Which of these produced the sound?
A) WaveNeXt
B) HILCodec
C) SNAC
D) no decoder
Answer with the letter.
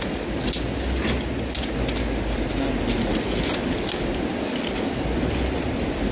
D